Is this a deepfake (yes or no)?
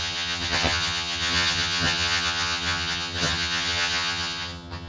yes